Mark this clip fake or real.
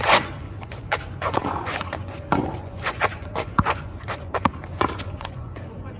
fake